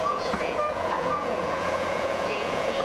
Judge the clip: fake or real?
fake